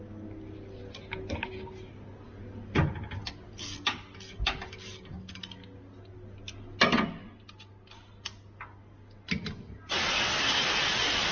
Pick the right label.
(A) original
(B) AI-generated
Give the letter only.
A